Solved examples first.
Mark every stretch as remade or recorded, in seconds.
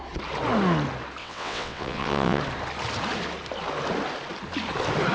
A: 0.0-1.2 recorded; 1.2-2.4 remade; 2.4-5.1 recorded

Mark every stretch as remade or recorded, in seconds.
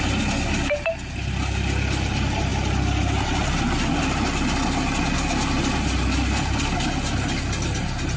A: 0.0-8.2 recorded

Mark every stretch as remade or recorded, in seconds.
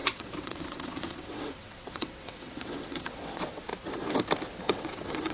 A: 0.0-3.7 remade; 3.7-4.6 recorded; 4.6-5.3 remade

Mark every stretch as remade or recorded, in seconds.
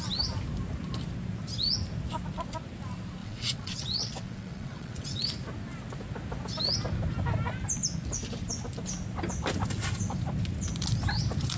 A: 0.0-3.2 recorded; 3.2-5.2 remade; 5.2-11.6 recorded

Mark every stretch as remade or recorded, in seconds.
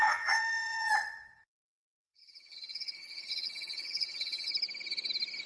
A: 0.0-4.5 remade; 4.5-5.5 recorded